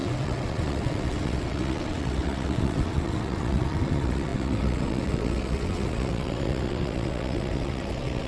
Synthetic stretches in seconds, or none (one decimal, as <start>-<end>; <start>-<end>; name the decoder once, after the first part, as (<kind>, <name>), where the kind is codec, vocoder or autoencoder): 0.0-8.3 (vocoder, WaveNeXt)

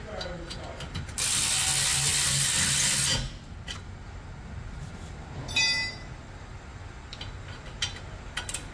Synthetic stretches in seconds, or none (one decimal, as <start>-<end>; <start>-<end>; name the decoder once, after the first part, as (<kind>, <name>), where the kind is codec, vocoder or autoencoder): none

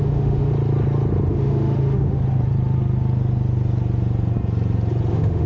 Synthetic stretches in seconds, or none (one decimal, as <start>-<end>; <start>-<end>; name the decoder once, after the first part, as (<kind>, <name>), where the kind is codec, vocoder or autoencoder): 0.0-0.5 (autoencoder, DAC-VAE); 1.3-2.2; 5.1-5.5

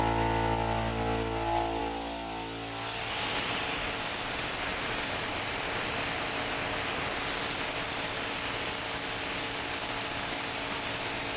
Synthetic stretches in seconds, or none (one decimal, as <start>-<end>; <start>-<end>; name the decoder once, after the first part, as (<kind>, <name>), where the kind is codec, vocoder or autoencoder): 4.7-6.0 (vocoder, BigVGAN v2)

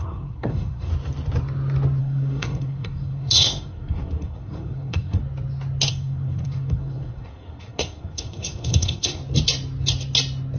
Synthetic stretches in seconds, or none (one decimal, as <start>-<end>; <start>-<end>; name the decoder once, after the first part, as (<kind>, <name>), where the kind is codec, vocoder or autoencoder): 0.0-0.9 (codec, SNAC); 2.0-5.2; 5.9-9.2